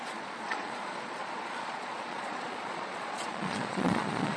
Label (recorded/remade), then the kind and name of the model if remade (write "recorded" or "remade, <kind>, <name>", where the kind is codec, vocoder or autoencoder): remade, vocoder, Vocos